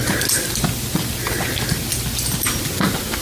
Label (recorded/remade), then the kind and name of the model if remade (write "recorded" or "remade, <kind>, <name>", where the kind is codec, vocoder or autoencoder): recorded